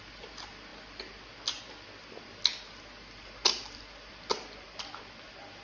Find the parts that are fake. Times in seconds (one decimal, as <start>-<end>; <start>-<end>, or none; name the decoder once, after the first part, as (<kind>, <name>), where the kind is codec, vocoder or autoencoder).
none